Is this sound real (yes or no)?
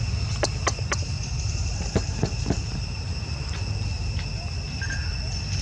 no